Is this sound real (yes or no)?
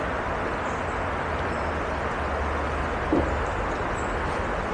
yes